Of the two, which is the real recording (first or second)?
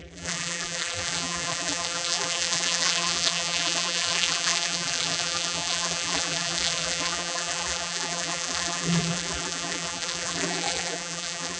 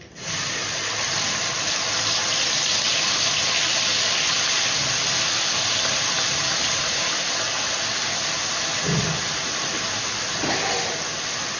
second